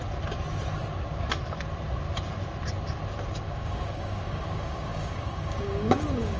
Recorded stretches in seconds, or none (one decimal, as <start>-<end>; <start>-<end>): 0.0-3.5